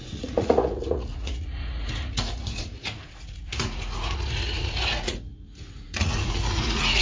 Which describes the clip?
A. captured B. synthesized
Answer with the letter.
B